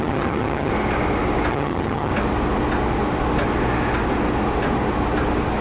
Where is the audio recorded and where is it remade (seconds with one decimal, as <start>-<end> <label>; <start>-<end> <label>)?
0.0-0.7 remade; 0.7-1.5 recorded; 1.5-2.1 remade; 2.1-5.6 recorded